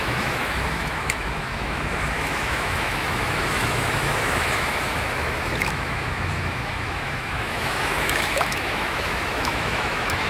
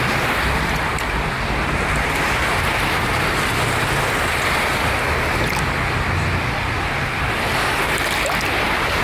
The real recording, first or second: second